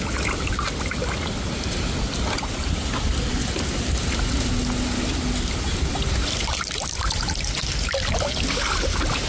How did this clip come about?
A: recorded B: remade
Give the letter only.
A